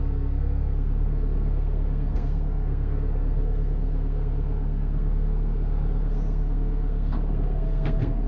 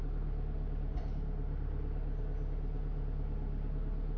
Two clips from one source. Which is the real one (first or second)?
second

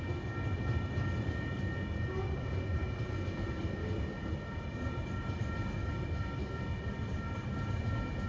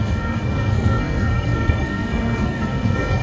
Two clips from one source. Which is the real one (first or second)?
first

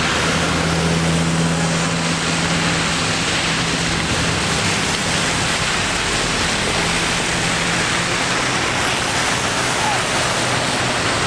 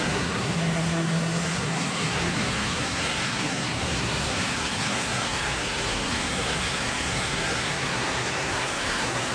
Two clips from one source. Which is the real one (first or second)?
first